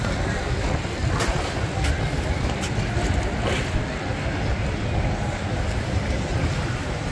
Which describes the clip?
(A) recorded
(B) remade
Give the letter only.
A